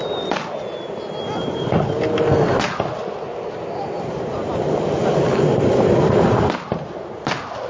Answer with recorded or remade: recorded